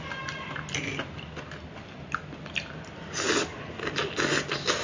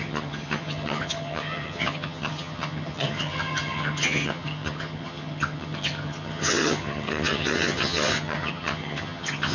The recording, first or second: first